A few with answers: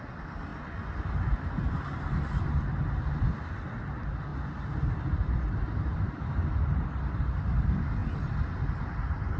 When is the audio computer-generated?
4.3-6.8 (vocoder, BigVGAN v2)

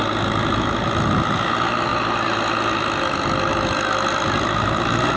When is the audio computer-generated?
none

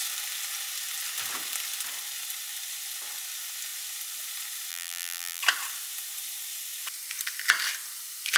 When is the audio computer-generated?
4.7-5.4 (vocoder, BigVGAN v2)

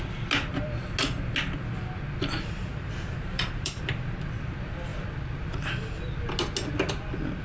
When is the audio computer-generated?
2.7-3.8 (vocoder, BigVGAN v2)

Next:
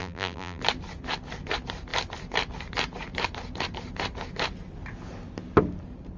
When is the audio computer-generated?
0.0-0.6 (vocoder, BigVGAN v2)

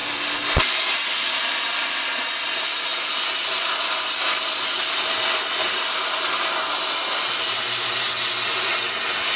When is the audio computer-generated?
none

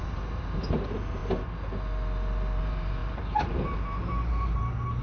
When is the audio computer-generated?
0.0-1.2 (vocoder, BigVGAN v2); 2.6-5.0